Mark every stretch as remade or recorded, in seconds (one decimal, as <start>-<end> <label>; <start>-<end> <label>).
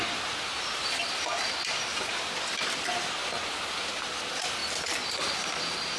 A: 0.0-3.2 recorded; 3.2-3.9 remade; 3.9-6.0 recorded